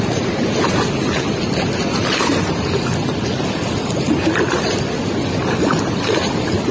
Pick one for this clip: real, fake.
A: real